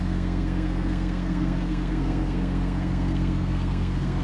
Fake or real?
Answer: fake